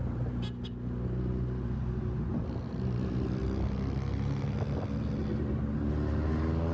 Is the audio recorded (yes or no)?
yes